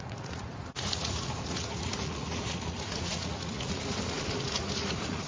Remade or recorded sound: remade